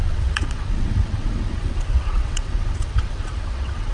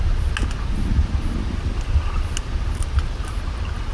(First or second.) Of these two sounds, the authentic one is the second